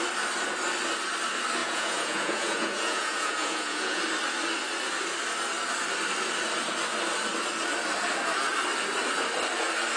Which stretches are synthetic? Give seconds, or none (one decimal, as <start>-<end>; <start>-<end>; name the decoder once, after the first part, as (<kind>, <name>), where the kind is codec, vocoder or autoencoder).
1.6-4.0 (vocoder, Vocos)